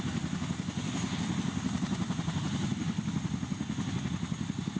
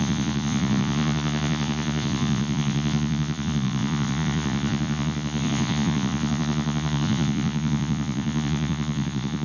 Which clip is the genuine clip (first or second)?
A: first